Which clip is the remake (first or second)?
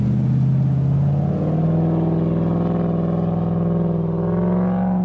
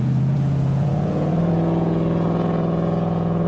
second